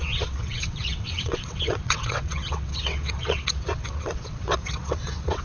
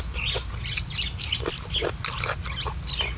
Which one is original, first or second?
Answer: second